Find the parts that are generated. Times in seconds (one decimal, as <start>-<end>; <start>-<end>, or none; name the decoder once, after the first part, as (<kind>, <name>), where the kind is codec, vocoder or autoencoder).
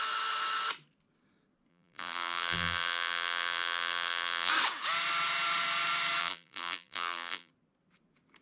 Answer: 1.7-4.5 (vocoder, BigVGAN v2); 6.2-7.5